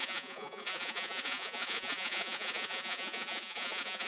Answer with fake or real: fake